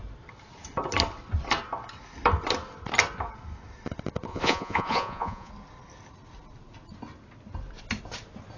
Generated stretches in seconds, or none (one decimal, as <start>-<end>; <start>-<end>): 4.3-5.5